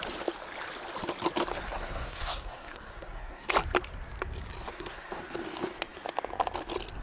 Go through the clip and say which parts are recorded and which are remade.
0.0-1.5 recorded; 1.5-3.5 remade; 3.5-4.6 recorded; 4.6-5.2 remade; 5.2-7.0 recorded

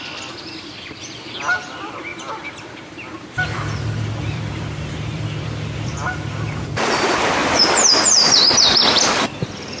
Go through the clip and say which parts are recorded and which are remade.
0.0-9.8 remade

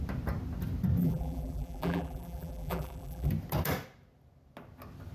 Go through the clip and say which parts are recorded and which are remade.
0.0-1.0 recorded; 1.0-3.3 remade; 3.3-5.1 recorded